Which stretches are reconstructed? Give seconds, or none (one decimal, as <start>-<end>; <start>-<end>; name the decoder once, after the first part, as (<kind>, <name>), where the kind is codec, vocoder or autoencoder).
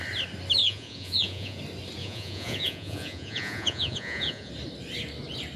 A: 0.6-1.6 (vocoder, Vocos); 2.0-4.5